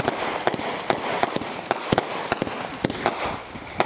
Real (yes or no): yes